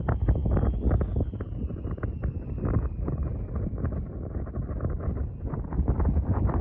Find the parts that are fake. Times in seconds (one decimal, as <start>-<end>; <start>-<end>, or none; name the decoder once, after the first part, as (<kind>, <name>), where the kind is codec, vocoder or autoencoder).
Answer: none